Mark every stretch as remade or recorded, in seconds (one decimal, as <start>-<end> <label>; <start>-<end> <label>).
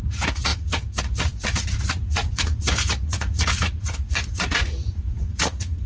0.0-5.9 remade